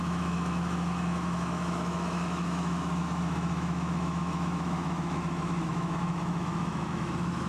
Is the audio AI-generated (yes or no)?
yes